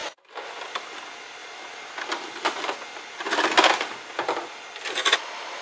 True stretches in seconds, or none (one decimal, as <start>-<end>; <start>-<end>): 0.8-5.6